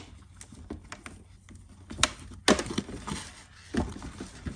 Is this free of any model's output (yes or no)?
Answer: yes